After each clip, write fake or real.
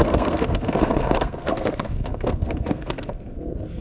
fake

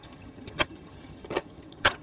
fake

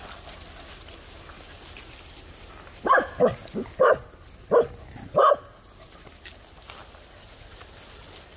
real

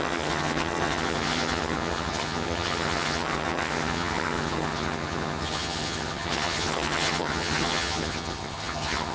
fake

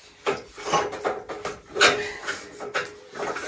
real